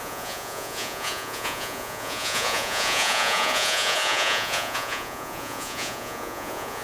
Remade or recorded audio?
remade